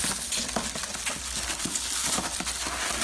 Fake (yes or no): no